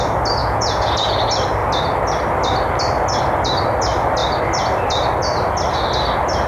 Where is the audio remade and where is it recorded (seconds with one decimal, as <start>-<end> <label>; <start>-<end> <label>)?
0.0-0.4 recorded; 0.4-1.1 remade; 1.1-6.5 recorded